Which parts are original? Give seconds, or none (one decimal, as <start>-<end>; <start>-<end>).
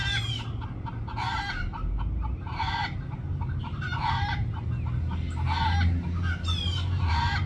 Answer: 0.0-7.5